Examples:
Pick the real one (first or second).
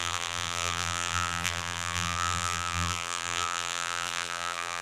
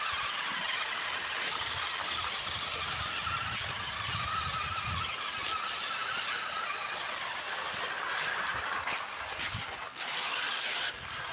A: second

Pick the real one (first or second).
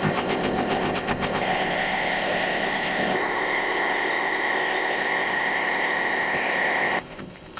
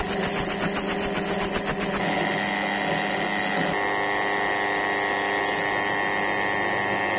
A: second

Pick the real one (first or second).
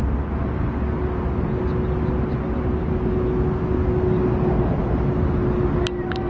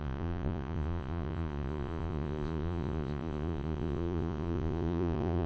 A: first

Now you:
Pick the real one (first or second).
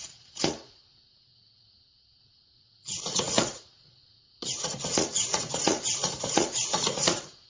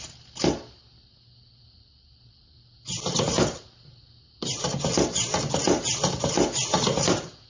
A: second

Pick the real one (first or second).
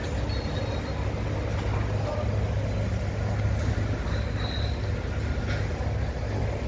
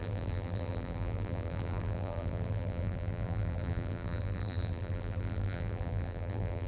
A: first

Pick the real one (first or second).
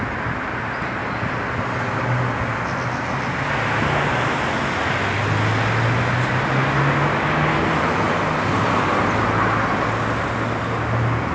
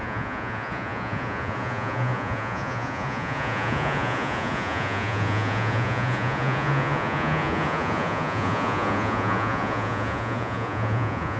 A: first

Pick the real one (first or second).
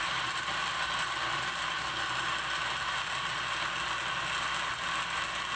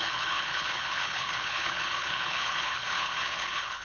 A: first